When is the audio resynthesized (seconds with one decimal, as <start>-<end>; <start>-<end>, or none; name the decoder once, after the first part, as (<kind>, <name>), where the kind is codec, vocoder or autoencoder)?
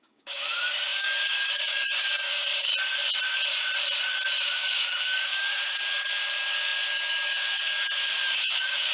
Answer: 0.0-2.7 (codec, DAC); 4.4-8.9